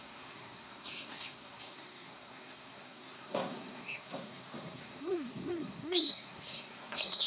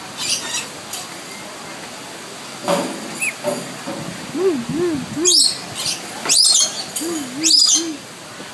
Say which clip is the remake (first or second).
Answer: first